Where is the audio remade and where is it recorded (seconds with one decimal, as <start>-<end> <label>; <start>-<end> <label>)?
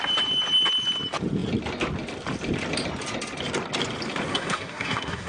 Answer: 0.0-4.3 recorded; 4.3-5.3 remade